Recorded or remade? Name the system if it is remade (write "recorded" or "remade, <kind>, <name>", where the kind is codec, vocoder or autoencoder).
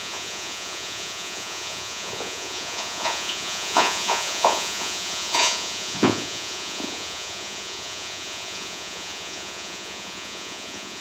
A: remade, vocoder, Vocos